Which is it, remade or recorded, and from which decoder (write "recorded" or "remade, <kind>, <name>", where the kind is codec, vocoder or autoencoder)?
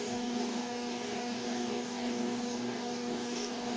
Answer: remade, codec, DAC